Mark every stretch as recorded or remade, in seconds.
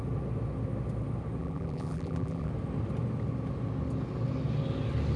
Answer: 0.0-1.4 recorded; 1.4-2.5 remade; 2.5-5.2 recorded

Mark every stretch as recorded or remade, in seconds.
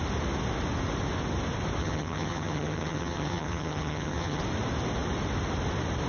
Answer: 0.0-1.8 recorded; 1.8-4.4 remade; 4.4-6.1 recorded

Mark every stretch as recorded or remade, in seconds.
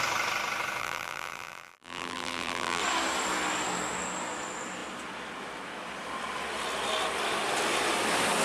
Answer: 0.0-0.8 recorded; 0.8-2.8 remade; 2.8-8.4 recorded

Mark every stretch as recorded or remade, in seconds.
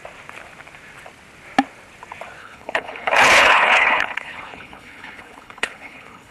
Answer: 0.0-2.4 recorded; 2.4-6.3 remade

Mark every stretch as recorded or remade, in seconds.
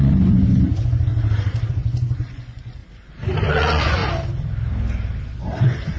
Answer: 0.0-1.1 remade; 1.1-1.7 recorded; 1.7-2.8 remade; 2.8-3.5 recorded; 3.5-4.0 remade; 4.0-5.4 recorded; 5.4-6.0 remade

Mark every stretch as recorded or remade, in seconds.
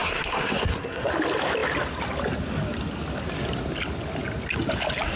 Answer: 0.0-1.1 remade; 1.1-5.2 recorded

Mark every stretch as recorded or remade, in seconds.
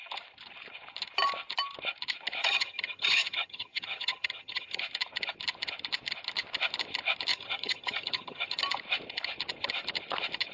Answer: 0.0-2.4 recorded; 2.4-4.8 remade; 4.8-7.3 recorded; 7.3-8.6 remade; 8.6-10.5 recorded